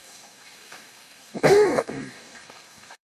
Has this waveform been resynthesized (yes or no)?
yes